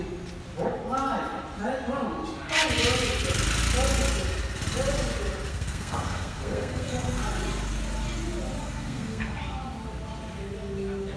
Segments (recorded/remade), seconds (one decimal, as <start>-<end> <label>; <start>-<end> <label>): 0.0-5.5 recorded; 5.5-7.2 remade; 7.2-8.6 recorded; 8.6-9.4 remade; 9.4-11.2 recorded